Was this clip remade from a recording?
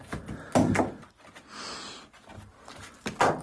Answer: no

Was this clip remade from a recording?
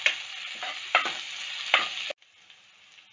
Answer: no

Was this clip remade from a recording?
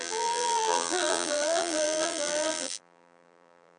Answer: yes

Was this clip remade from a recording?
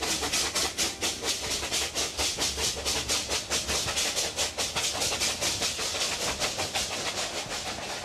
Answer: no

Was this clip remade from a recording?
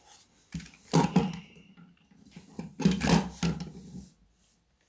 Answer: no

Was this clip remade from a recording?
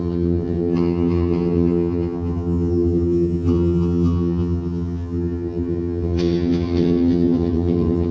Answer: yes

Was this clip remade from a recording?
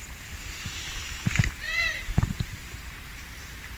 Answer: yes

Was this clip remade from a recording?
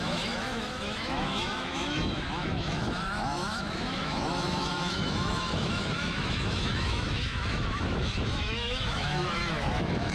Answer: yes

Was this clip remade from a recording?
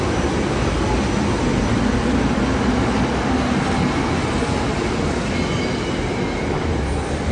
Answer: no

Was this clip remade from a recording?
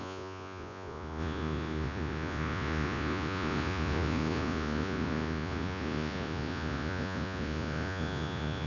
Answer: yes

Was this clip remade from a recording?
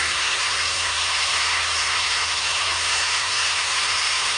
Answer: yes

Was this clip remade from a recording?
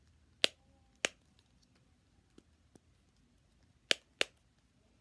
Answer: no